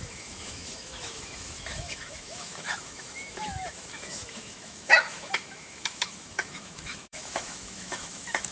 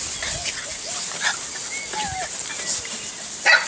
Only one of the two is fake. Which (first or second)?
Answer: first